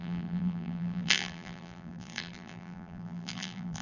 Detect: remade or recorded remade